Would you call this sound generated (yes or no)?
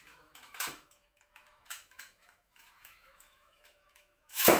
yes